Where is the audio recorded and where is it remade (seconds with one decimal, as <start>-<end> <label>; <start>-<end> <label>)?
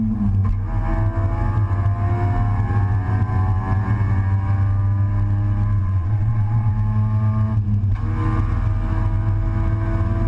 0.0-5.8 recorded; 5.8-6.7 remade; 6.7-10.3 recorded